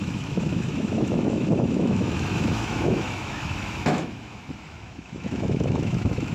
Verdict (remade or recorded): remade